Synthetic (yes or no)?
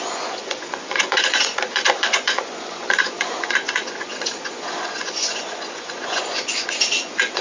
yes